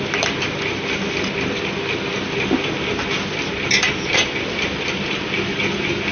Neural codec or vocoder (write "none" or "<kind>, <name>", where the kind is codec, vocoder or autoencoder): none